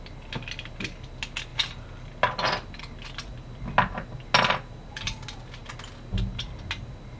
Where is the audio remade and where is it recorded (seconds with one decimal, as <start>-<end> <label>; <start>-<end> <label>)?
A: 0.0-7.2 recorded